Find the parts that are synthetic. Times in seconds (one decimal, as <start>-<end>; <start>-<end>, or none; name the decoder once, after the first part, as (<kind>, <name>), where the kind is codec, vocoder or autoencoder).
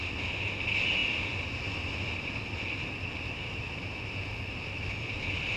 none